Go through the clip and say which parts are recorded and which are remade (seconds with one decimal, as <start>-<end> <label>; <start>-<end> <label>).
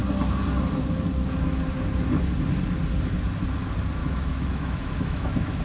0.0-4.0 recorded; 4.0-5.6 remade